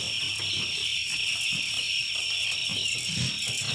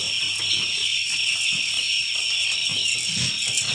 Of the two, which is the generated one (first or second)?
first